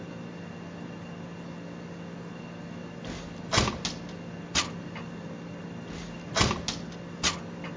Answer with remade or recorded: recorded